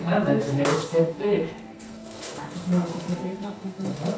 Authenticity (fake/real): fake